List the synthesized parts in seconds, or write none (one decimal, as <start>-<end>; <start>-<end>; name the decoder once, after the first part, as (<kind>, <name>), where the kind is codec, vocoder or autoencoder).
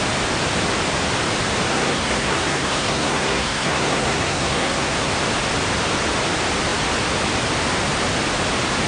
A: 1.7-5.1 (codec, SNAC)